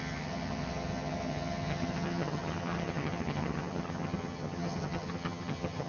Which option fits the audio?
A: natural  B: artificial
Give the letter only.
B